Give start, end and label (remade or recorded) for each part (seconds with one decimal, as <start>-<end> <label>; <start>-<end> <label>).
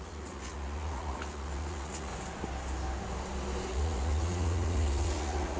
0.0-2.1 remade; 2.1-3.7 recorded; 3.7-5.6 remade